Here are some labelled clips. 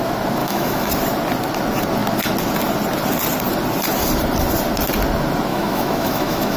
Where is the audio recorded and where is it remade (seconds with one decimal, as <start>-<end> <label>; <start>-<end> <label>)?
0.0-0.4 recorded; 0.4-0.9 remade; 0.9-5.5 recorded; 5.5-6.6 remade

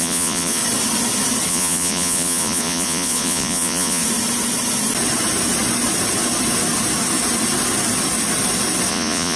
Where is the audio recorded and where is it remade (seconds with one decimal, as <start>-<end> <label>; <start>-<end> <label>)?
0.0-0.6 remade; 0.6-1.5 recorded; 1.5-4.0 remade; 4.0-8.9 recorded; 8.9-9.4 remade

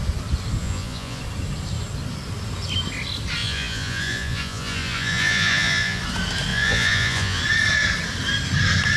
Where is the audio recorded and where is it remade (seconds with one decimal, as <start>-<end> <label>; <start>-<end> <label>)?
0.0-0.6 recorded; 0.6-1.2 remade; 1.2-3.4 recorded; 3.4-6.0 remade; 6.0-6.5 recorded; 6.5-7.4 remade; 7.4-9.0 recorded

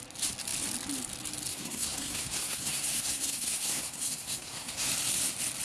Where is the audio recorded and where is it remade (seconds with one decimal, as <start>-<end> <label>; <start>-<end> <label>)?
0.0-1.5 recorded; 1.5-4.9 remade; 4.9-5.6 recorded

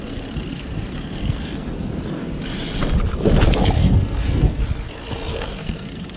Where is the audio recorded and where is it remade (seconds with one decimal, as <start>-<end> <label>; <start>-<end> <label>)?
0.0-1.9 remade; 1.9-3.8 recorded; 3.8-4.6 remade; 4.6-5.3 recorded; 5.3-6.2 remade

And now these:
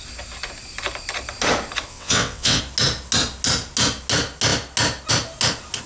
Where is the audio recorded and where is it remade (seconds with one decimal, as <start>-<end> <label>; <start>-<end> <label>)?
0.0-1.9 recorded; 1.9-2.6 remade; 2.6-5.9 recorded

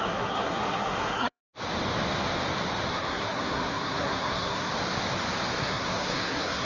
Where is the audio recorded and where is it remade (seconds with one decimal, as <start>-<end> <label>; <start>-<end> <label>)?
0.0-1.4 remade; 1.4-2.9 recorded; 2.9-4.7 remade; 4.7-5.6 recorded; 5.6-6.7 remade